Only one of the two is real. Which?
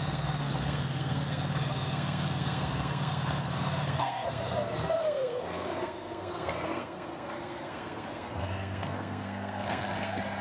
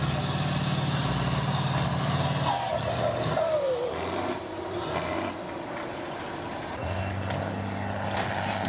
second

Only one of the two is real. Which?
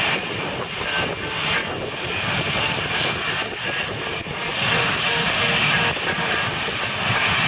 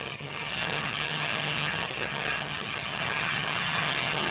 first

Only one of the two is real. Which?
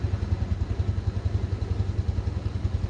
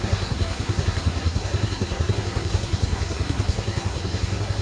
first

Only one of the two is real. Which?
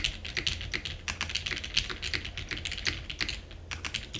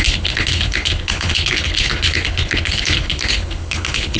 first